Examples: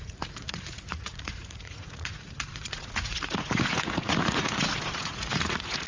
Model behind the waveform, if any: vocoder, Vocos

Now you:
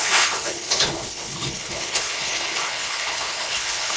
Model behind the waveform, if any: codec, HILCodec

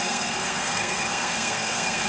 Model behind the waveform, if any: codec, SNAC